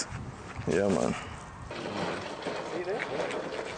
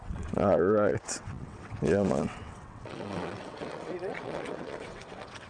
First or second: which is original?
first